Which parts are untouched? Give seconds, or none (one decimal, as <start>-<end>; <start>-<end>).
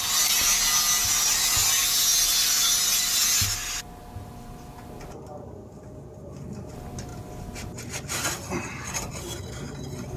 0.0-10.2